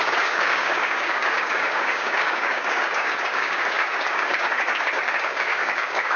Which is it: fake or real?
fake